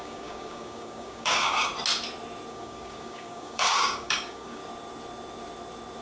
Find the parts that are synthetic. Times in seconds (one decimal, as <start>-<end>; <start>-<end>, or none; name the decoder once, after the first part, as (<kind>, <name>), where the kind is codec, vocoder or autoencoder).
0.0-1.7 (codec, DAC); 2.5-4.6